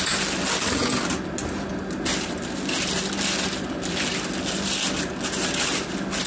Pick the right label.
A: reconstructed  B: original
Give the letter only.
B